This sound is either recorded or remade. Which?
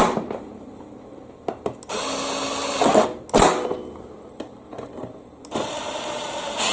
recorded